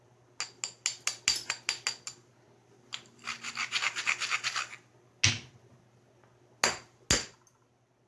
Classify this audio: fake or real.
real